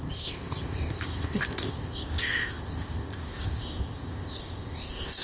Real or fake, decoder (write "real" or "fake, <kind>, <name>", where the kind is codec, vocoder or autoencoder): fake, codec, ZipCodec